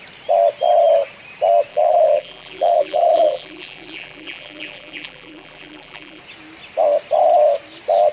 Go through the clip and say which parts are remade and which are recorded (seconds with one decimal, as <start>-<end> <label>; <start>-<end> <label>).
0.0-1.7 recorded; 1.7-6.2 remade; 6.2-8.1 recorded